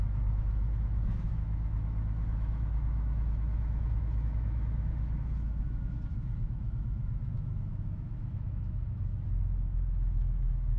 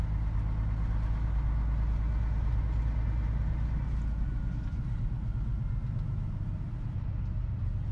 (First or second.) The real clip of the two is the second